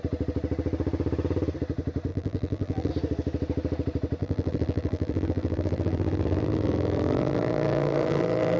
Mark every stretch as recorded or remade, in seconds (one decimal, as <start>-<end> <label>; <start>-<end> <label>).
0.0-2.1 recorded; 2.1-2.9 remade; 2.9-4.2 recorded; 4.2-8.6 remade